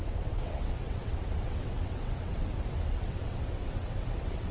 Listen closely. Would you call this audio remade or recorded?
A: remade